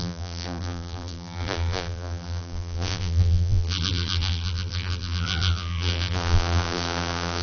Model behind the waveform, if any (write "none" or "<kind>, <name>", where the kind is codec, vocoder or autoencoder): vocoder, BigVGAN v2